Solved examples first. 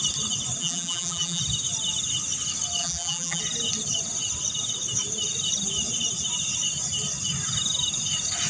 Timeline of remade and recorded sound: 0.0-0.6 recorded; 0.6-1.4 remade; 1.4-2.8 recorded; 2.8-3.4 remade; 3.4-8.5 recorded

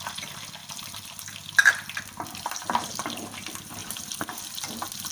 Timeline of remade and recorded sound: 0.0-0.6 recorded; 0.6-2.9 remade; 2.9-3.8 recorded; 3.8-4.4 remade; 4.4-5.1 recorded

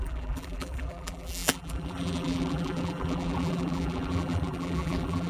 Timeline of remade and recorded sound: 0.0-5.3 remade

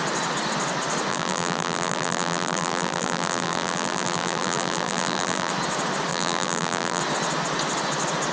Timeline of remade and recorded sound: 0.0-1.1 recorded; 1.1-5.5 remade; 5.5-6.1 recorded; 6.1-7.0 remade; 7.0-8.3 recorded

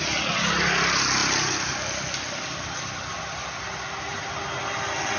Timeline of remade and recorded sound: 0.0-1.2 recorded; 1.2-4.3 remade; 4.3-5.2 recorded

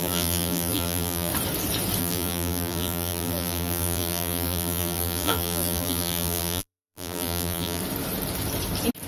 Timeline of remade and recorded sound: 0.0-1.3 remade; 1.3-2.0 recorded; 2.0-7.8 remade; 7.8-9.1 recorded

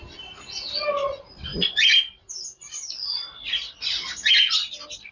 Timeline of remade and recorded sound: 0.0-0.6 remade; 0.6-5.1 recorded